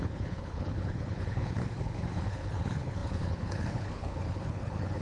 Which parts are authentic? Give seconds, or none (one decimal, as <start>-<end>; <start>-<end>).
none